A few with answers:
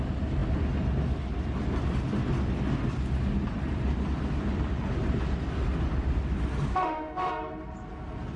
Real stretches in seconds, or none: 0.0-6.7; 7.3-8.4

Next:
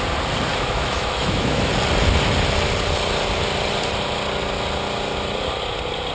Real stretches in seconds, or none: 0.0-0.5; 1.7-6.1